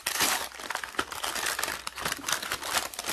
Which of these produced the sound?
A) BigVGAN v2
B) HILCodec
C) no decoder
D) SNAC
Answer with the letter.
C